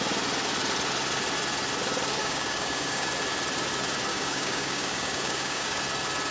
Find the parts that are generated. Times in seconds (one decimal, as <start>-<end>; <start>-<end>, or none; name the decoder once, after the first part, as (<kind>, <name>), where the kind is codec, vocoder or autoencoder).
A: 2.2-3.1 (codec, DAC); 4.1-5.8